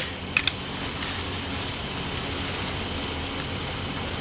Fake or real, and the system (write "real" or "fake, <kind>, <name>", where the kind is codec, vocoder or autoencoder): real